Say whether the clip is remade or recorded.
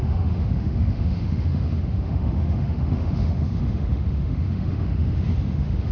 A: remade